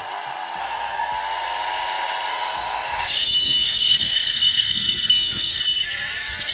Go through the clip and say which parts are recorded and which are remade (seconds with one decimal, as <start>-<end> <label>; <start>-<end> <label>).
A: 0.0-0.6 recorded; 0.6-1.1 remade; 1.1-2.3 recorded; 2.3-5.6 remade; 5.6-6.5 recorded